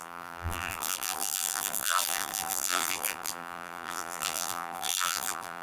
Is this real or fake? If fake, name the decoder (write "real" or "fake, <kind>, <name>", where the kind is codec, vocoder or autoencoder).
fake, vocoder, BigVGAN v2